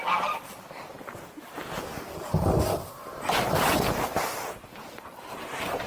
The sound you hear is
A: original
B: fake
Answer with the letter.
B